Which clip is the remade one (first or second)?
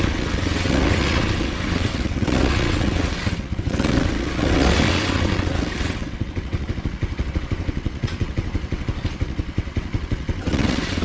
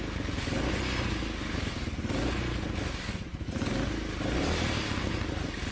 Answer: first